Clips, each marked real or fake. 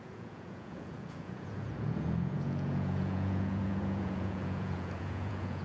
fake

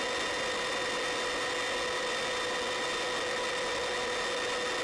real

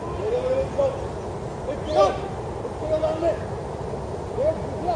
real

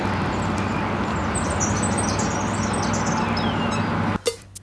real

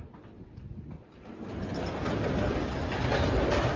real